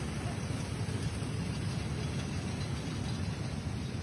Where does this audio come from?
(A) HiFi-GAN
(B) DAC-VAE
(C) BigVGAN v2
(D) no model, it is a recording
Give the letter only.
D